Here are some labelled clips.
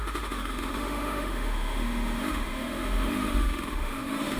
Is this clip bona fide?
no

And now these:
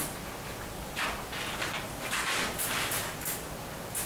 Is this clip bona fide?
yes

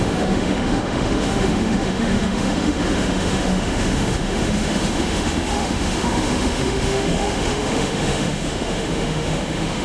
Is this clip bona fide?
no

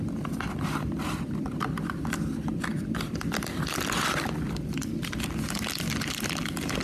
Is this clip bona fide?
yes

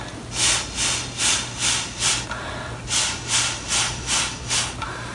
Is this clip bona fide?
yes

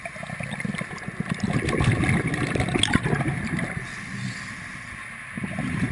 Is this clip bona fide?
yes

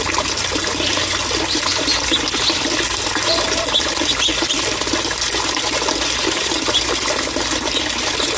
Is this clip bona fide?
yes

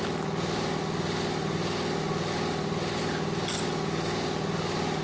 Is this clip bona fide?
yes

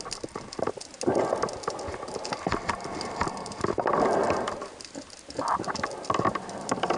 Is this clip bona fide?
yes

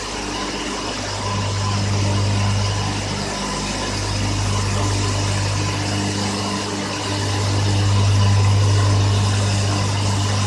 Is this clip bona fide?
yes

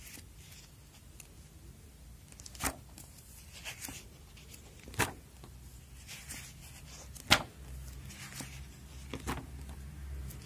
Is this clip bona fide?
yes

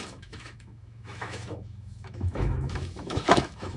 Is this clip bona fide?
no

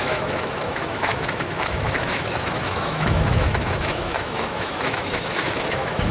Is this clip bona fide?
no